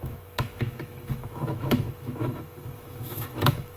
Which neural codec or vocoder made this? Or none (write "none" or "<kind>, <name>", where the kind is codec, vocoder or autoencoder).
autoencoder, DAC-VAE